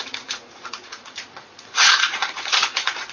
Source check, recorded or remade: remade